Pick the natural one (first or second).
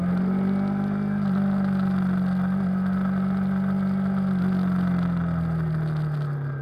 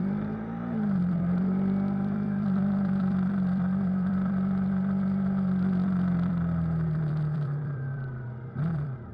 first